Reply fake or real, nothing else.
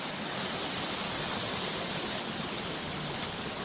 real